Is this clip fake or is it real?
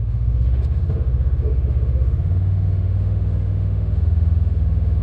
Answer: fake